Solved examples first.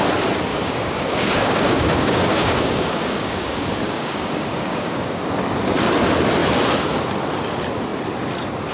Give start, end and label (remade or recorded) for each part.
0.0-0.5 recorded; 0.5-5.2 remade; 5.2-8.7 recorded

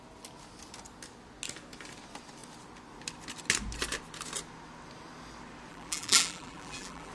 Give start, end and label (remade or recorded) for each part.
0.0-5.7 recorded; 5.7-7.1 remade

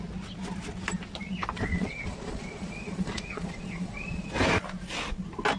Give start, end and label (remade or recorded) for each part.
0.0-1.7 recorded; 1.7-4.3 remade; 4.3-5.6 recorded

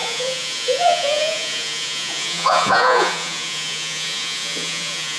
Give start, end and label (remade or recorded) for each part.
0.0-5.2 remade

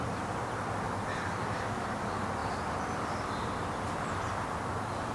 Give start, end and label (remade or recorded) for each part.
0.0-5.1 recorded

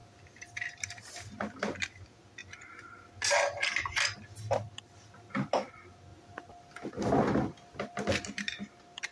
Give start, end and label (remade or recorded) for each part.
0.0-9.1 recorded

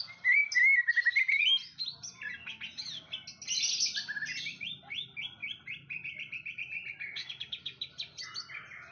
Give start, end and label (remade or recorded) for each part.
0.0-8.9 recorded